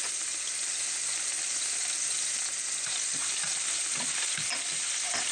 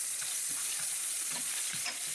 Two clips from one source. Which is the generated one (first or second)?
second